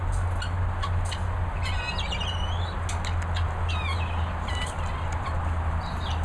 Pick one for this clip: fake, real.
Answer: real